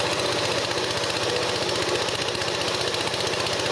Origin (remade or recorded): recorded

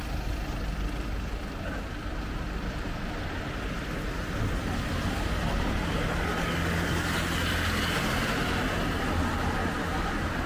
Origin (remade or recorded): recorded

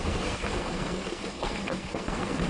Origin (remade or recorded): remade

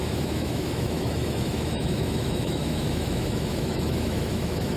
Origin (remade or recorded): remade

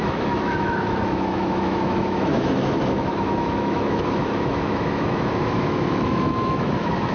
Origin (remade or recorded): remade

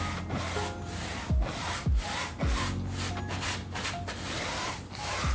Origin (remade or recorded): recorded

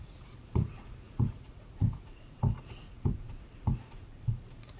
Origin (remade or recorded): remade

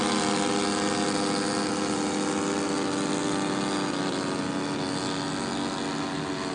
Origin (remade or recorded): recorded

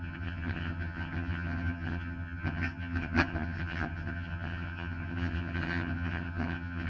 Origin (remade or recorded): remade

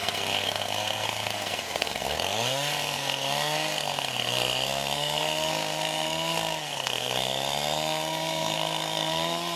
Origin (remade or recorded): remade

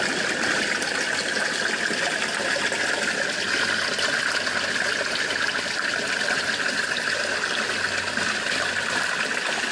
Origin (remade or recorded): recorded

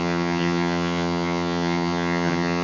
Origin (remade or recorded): remade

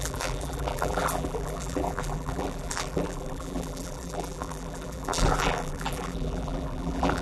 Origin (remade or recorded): remade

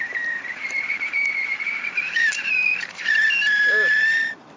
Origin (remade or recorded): remade